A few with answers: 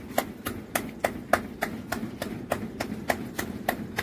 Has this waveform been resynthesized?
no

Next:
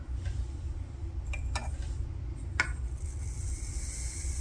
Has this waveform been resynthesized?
no